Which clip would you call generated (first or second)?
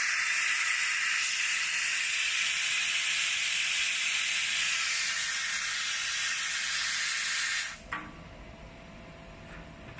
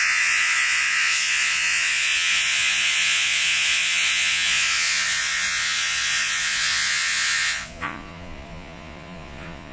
second